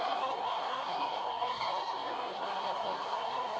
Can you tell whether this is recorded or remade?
remade